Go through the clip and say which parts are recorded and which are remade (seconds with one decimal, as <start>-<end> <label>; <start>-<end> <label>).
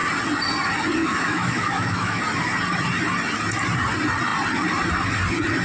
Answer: 0.0-1.0 recorded; 1.0-2.2 remade; 2.2-5.6 recorded